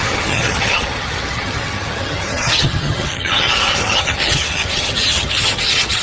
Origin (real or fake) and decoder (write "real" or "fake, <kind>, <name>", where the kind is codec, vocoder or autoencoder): fake, vocoder, HiFi-GAN